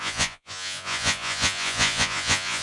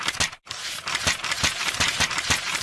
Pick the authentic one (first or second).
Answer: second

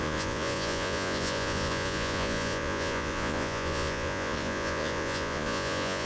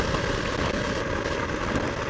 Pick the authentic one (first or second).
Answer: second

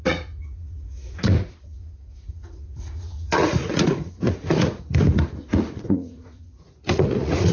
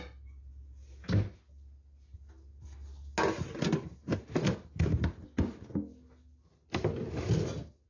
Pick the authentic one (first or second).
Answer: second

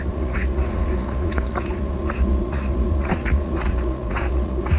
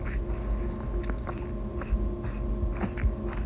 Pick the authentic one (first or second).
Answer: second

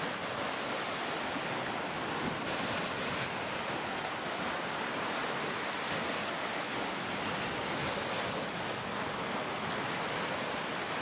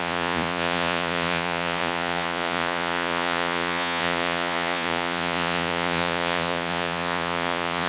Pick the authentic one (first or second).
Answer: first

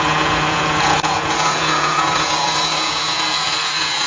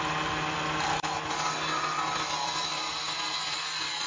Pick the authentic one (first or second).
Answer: second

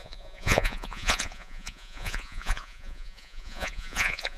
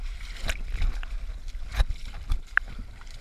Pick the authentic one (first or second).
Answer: second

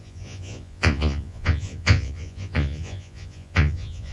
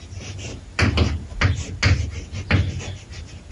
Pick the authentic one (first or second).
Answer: second